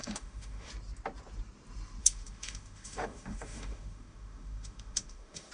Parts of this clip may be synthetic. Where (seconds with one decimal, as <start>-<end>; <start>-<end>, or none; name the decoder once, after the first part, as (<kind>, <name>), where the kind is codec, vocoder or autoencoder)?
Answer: 0.0-0.7 (autoencoder, DAC-VAE); 2.0-5.5